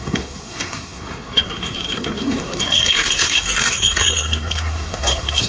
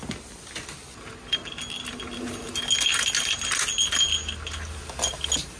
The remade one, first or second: first